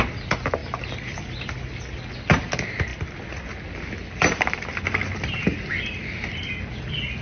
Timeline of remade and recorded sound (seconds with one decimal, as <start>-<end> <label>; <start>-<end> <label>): 0.0-7.2 recorded